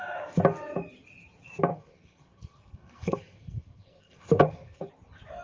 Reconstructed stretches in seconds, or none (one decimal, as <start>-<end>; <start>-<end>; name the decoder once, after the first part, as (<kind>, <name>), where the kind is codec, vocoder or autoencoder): 1.7-4.9 (codec, SNAC)